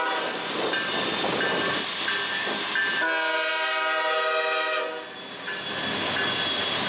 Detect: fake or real real